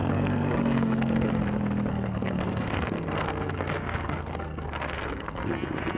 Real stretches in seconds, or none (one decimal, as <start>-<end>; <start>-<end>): 1.4-1.9; 5.5-6.0